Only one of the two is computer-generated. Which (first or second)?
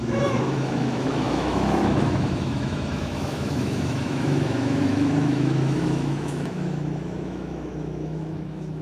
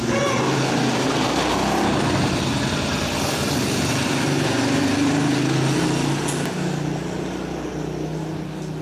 first